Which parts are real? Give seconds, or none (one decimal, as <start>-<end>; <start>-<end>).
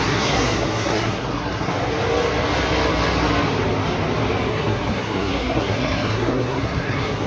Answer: 1.7-4.5